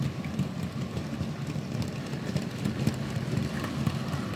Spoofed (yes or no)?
no